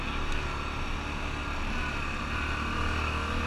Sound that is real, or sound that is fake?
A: real